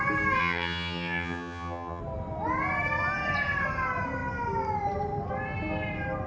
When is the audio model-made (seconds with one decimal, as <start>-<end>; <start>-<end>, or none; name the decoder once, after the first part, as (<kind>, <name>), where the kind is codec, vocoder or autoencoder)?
0.4-2.0 (vocoder, HiFi-GAN)